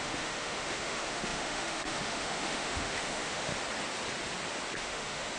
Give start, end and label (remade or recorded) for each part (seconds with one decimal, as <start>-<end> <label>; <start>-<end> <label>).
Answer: 0.0-3.5 remade; 3.5-4.8 recorded; 4.8-5.4 remade

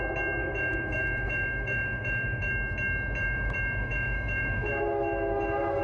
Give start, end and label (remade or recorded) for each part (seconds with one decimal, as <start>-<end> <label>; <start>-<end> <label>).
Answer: 0.0-0.4 recorded; 0.4-2.5 remade; 2.5-3.2 recorded; 3.2-5.8 remade

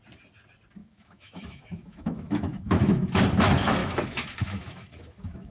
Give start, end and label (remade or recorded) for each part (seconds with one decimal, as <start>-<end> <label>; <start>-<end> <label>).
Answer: 0.0-0.8 recorded; 0.8-3.2 remade; 3.2-3.8 recorded; 3.8-5.5 remade

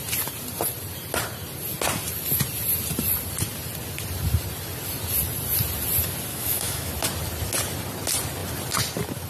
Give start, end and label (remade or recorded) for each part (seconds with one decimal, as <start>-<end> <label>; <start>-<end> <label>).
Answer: 0.0-6.3 recorded; 6.3-6.9 remade; 6.9-9.3 recorded

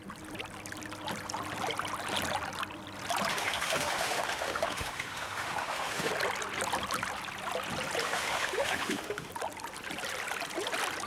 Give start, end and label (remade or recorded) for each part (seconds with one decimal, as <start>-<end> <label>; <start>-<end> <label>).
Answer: 0.0-3.3 recorded; 3.3-6.1 remade; 6.1-8.0 recorded; 8.0-9.3 remade; 9.3-11.1 recorded

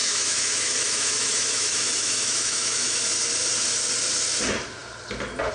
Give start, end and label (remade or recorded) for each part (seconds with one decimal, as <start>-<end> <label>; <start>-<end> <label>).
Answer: 0.0-3.0 remade; 3.0-5.5 recorded